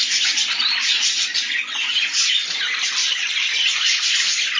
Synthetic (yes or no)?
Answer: no